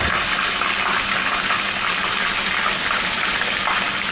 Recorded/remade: recorded